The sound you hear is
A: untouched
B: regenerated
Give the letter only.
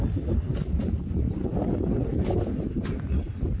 A